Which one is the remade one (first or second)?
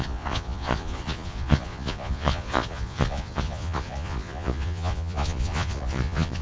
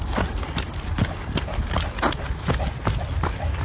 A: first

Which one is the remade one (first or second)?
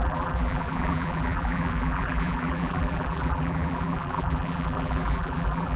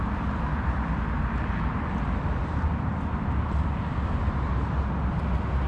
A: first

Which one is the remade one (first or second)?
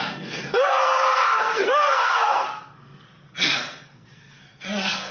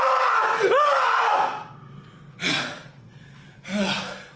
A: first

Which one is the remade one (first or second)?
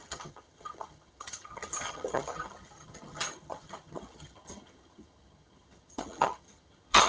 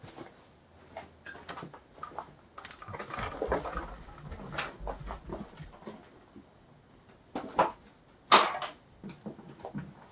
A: first